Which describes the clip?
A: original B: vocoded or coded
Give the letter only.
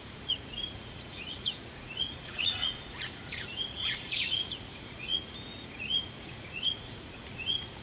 B